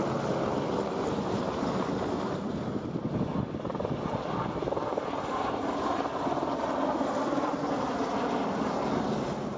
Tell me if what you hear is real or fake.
real